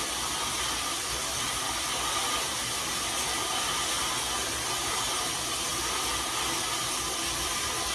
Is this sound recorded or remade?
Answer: recorded